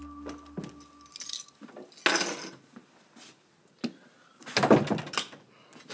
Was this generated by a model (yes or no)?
no